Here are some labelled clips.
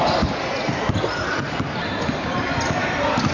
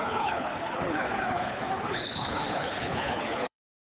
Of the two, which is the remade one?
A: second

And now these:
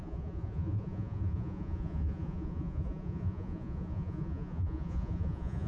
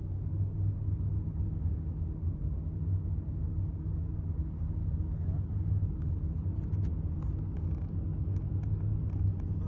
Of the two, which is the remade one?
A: first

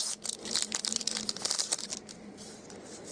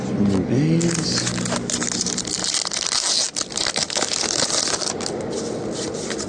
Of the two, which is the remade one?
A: first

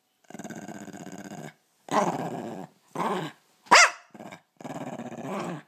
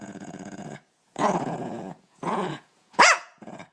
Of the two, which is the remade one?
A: second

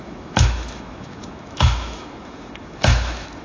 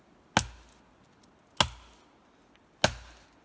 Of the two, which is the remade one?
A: first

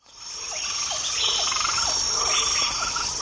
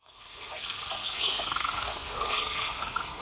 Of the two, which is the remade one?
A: second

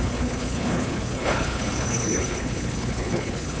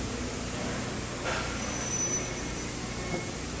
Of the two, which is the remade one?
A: first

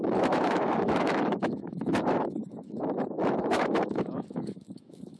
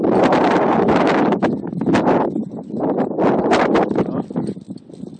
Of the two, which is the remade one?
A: first